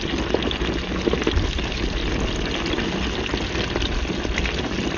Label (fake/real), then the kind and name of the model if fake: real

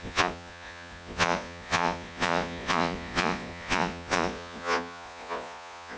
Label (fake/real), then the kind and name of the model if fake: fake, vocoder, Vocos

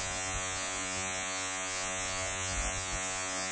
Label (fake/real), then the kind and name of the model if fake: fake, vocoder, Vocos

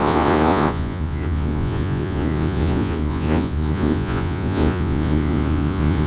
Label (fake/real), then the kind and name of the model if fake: fake, vocoder, Vocos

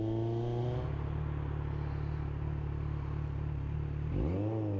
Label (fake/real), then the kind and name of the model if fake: real